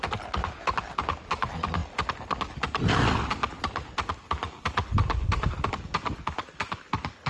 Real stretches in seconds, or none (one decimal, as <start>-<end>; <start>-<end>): 0.0-7.3